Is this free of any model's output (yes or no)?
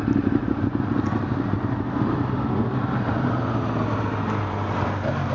yes